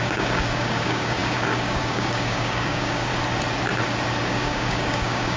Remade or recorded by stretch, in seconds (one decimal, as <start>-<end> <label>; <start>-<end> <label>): 0.0-3.1 remade; 3.1-4.2 recorded; 4.2-5.4 remade

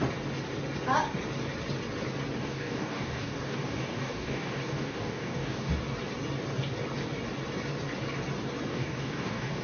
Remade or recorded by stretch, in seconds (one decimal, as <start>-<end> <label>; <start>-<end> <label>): 0.0-2.4 recorded; 2.4-5.7 remade; 5.7-8.7 recorded; 8.7-9.6 remade

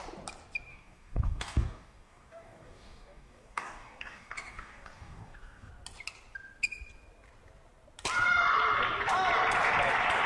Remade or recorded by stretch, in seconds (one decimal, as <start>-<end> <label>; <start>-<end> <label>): 0.0-0.7 recorded; 0.7-5.7 remade; 5.7-10.3 recorded

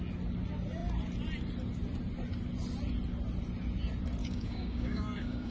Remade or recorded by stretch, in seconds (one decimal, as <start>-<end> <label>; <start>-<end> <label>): 0.0-4.2 recorded; 4.2-5.5 remade

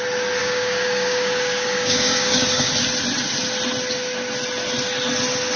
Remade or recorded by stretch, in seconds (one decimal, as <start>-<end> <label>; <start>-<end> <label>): 0.0-0.4 recorded; 0.4-2.7 remade; 2.7-5.6 recorded